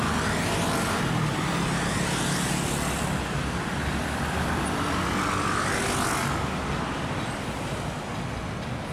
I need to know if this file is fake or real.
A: real